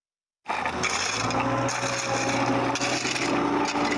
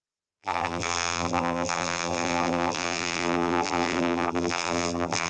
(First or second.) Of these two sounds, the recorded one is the first